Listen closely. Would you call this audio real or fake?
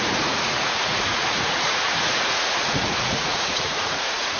fake